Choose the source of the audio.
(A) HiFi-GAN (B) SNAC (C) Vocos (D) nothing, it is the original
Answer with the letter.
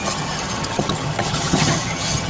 A